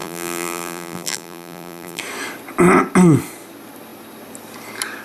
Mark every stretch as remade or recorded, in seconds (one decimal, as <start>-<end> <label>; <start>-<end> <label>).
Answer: 0.0-2.0 remade; 2.0-5.0 recorded